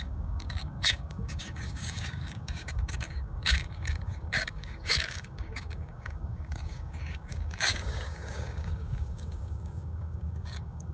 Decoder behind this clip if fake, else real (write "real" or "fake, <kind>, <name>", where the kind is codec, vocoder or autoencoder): fake, codec, DAC